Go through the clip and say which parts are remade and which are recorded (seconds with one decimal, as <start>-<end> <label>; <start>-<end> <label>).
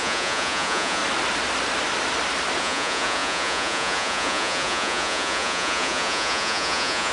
0.0-1.0 remade; 1.0-2.6 recorded; 2.6-7.1 remade